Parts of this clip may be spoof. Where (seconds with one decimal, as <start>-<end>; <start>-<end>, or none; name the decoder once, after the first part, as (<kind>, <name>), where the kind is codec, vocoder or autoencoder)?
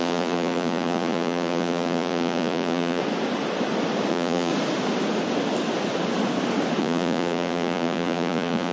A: 0.0-3.0 (vocoder, Vocos); 4.1-4.5; 6.8-8.7